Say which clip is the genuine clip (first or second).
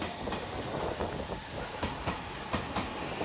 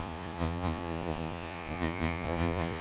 first